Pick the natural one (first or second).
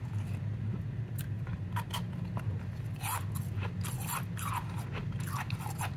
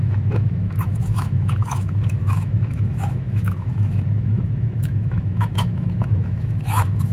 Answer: first